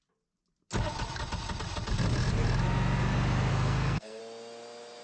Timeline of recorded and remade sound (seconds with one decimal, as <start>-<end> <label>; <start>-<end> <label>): 0.0-3.5 recorded; 3.5-4.2 remade; 4.2-5.0 recorded